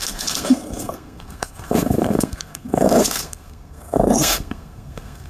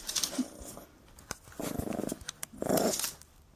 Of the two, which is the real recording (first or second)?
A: second